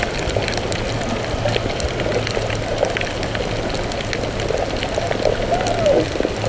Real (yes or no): yes